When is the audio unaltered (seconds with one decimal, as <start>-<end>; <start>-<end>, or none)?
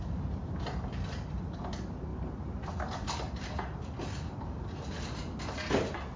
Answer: 0.0-6.2